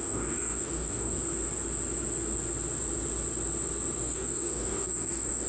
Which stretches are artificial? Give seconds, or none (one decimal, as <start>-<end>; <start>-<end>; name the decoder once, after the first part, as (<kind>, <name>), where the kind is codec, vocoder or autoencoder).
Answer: 0.0-1.2 (codec, DAC); 4.0-5.5